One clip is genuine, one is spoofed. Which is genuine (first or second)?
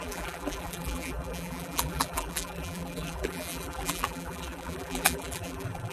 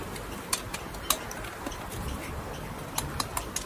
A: second